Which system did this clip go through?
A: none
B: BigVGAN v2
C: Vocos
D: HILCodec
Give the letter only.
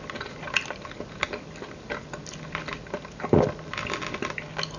A